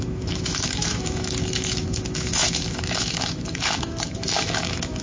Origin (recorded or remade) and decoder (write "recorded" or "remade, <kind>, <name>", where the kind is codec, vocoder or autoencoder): remade, autoencoder, DAC-VAE